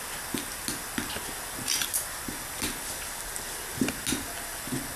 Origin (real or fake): real